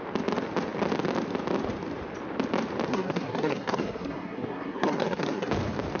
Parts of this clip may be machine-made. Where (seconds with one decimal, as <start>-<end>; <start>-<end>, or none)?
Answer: 2.9-5.5